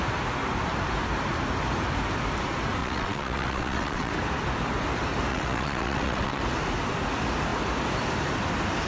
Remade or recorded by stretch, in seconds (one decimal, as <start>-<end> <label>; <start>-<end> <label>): 0.0-2.8 recorded; 2.8-4.1 remade; 4.1-5.3 recorded; 5.3-6.4 remade; 6.4-8.9 recorded